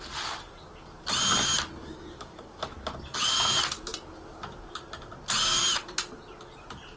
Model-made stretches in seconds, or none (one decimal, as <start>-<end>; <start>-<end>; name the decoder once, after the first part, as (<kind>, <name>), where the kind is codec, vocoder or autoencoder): 1.8-2.6 (codec, DAC)